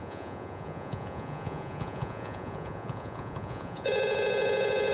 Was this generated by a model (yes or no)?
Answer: yes